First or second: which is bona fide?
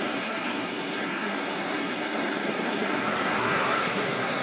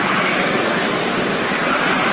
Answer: second